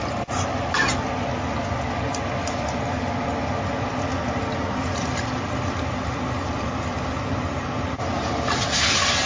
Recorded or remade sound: recorded